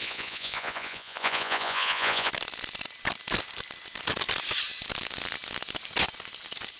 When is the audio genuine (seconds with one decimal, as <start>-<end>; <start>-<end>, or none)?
2.3-6.8